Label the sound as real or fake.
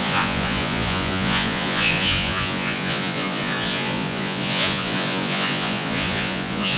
fake